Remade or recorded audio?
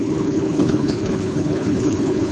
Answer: remade